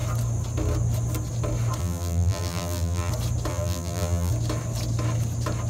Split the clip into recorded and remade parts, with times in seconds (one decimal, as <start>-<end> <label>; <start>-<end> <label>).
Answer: 0.0-1.8 recorded; 1.8-3.1 remade; 3.1-3.5 recorded; 3.5-4.3 remade; 4.3-5.7 recorded